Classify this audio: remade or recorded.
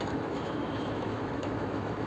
remade